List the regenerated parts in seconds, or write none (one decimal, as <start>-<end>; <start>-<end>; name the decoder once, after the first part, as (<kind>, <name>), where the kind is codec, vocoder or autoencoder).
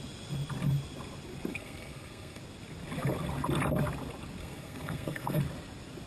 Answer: 1.5-2.4 (codec, SNAC); 4.4-5.4